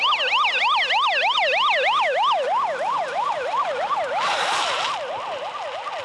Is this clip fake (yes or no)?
no